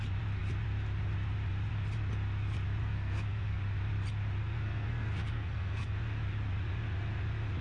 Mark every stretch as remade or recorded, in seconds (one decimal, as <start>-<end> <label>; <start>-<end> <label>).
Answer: 0.0-2.8 recorded; 2.8-3.6 remade; 3.6-4.4 recorded; 4.4-5.9 remade; 5.9-7.6 recorded